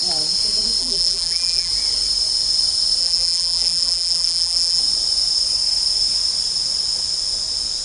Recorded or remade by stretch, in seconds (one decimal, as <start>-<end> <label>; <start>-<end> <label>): 0.0-0.8 recorded; 0.8-1.7 remade; 1.7-3.0 recorded; 3.0-4.8 remade; 4.8-7.8 recorded